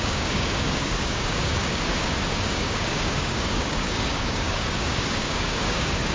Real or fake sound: fake